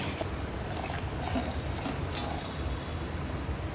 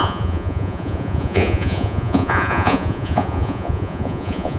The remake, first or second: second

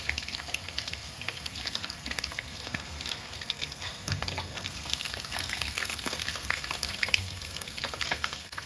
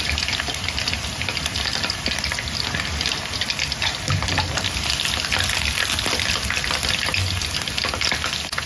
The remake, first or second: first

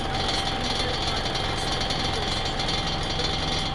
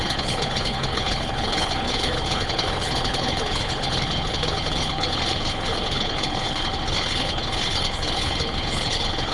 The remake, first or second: second